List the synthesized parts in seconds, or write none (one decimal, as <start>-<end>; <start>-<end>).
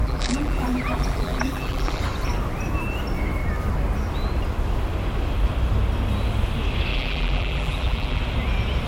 0.0-2.0; 6.9-8.2